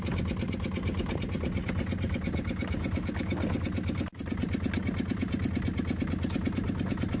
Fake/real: real